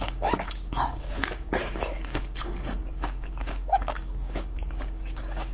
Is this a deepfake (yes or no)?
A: yes